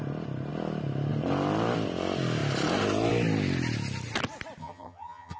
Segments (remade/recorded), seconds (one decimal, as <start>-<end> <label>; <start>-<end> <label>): 0.0-4.6 recorded; 4.6-5.4 remade